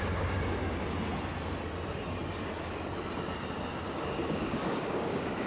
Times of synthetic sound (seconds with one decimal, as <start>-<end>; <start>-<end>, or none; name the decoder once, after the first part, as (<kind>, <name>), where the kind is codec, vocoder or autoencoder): 0.0-0.6 (codec, DAC); 3.9-5.5